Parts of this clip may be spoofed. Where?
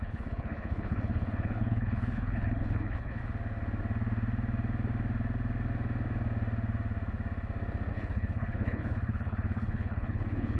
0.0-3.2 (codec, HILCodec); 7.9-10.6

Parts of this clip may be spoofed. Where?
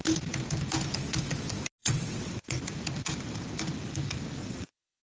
1.8-2.6 (vocoder, WaveNeXt); 4.4-5.0